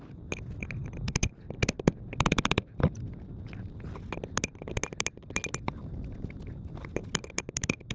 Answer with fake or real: real